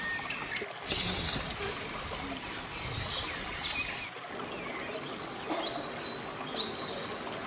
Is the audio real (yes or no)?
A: yes